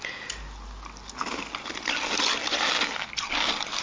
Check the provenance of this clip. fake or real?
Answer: real